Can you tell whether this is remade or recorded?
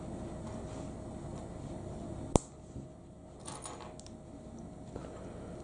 recorded